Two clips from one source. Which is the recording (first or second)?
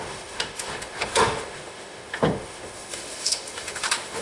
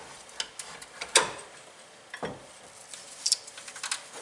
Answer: second